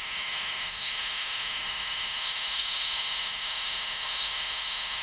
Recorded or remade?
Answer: remade